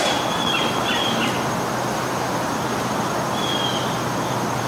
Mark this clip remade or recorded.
recorded